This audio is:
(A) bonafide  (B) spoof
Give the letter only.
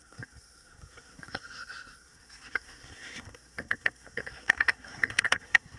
B